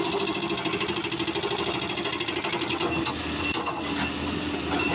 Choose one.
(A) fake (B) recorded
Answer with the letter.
B